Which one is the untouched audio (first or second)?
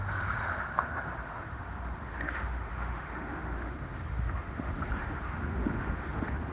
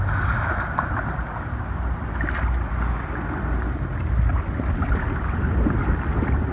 second